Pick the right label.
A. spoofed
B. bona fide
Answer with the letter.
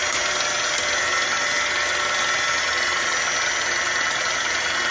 B